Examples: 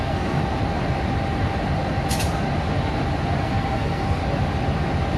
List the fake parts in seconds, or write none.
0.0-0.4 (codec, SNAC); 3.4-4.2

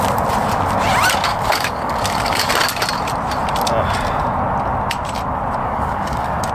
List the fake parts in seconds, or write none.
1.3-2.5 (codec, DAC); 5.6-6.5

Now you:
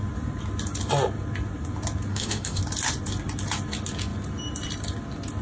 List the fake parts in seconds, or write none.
2.1-2.6 (autoencoder, DAC-VAE)

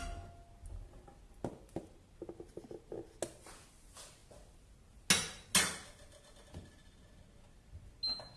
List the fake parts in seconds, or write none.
none

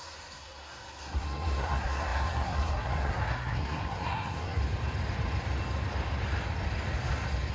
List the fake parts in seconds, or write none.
0.0-4.6 (codec, SNAC)